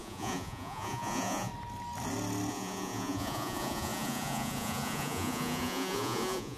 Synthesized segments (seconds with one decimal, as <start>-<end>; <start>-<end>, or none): 0.0-1.5; 2.5-6.6